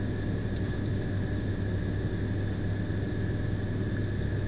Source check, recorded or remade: recorded